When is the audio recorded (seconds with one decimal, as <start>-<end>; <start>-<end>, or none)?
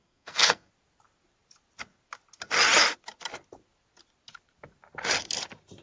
0.7-5.8